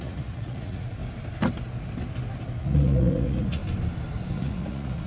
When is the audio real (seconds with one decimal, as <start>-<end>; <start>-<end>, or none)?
1.0-2.6; 3.6-4.3